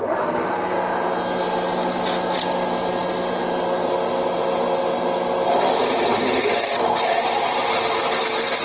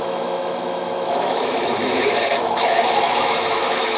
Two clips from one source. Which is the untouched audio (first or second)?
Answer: first